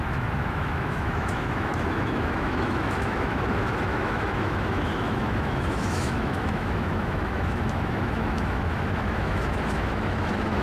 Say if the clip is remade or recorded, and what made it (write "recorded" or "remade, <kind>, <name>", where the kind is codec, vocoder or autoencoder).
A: remade, autoencoder, DAC-VAE